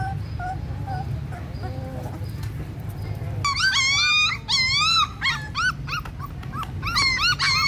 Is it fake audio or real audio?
real